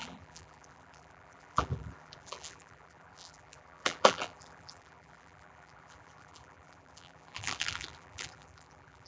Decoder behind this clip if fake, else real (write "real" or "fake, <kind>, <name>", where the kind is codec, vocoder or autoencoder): fake, vocoder, BigVGAN v2